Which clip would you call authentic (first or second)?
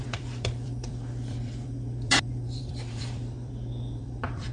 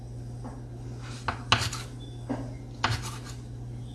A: second